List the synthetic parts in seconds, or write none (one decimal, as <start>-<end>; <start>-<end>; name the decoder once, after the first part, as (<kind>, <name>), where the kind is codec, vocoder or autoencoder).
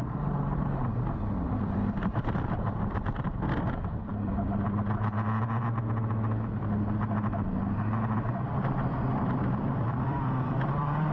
0.0-4.1 (vocoder, BigVGAN v2); 8.4-11.1